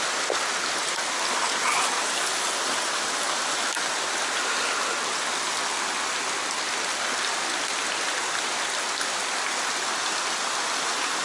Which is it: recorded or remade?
recorded